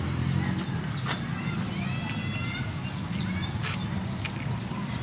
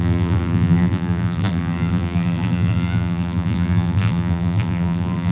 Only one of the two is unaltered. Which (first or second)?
first